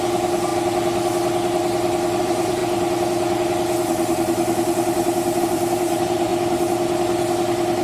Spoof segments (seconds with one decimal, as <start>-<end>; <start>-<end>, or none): 0.0-0.5; 2.2-2.6; 5.4-6.3

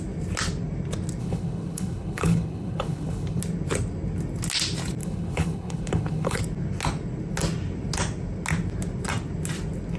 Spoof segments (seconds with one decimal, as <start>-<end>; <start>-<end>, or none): 1.2-3.4; 5.0-6.4

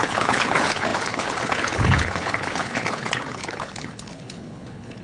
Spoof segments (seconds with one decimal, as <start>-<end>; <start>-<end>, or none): 0.0-5.0